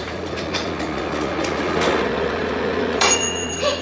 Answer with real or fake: fake